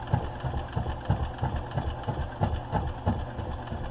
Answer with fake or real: real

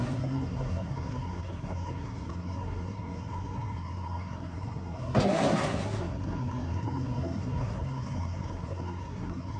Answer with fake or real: fake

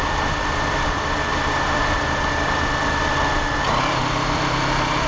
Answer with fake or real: real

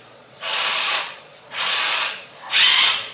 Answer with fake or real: fake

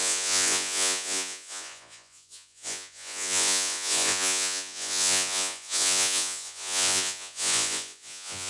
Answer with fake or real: fake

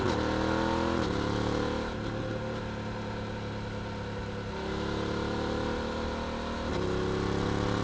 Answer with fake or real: real